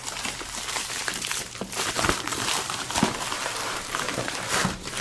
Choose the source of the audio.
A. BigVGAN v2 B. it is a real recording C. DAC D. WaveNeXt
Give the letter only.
A